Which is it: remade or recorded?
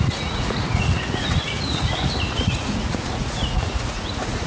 remade